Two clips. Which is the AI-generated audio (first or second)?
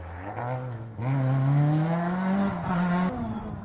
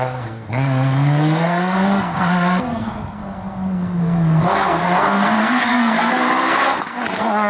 second